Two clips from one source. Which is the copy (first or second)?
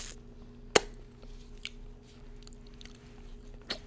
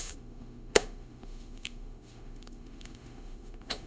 second